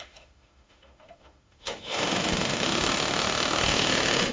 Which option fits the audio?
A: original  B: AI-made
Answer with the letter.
B